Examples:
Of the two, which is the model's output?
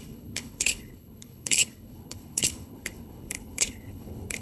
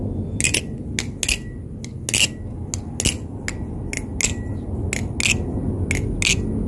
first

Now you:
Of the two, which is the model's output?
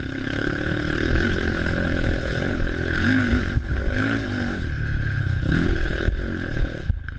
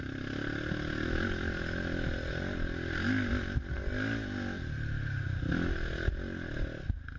first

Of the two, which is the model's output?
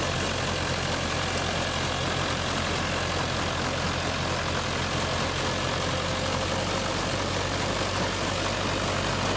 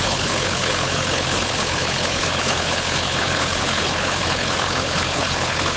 second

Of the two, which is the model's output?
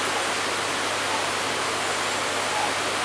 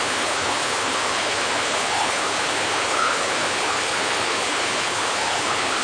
second